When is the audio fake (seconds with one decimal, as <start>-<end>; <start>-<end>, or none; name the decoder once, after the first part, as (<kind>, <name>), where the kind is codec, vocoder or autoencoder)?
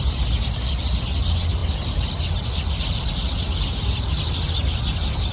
none